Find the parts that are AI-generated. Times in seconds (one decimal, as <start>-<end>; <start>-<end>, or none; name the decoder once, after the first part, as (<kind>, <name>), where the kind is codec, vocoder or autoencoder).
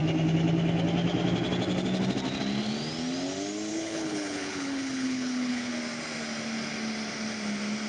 3.7-5.7 (codec, HILCodec)